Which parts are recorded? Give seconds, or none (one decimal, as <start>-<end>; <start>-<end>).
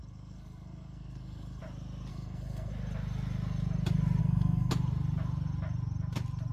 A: 1.6-2.1; 2.7-4.2; 4.7-6.5